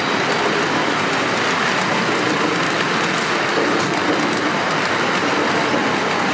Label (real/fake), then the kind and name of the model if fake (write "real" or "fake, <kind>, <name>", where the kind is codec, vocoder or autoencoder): real